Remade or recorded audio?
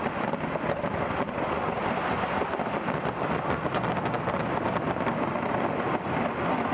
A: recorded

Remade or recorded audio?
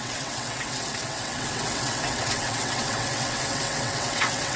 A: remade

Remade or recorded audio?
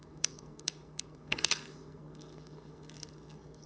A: remade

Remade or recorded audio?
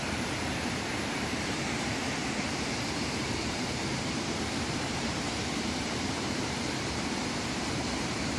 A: remade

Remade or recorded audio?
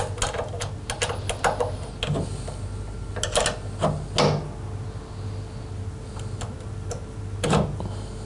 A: recorded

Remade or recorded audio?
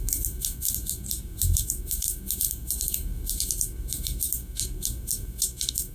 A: remade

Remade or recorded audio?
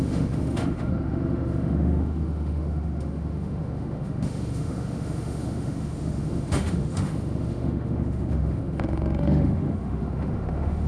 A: remade